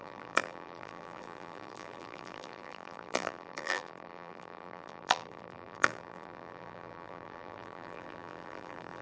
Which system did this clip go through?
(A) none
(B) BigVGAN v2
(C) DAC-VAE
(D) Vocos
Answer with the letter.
B